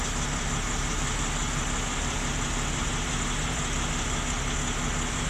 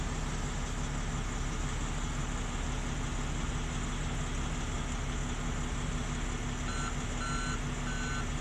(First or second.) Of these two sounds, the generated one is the first